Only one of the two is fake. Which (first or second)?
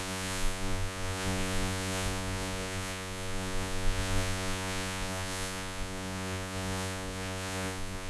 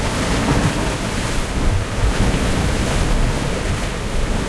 first